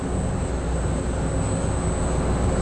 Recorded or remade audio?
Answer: recorded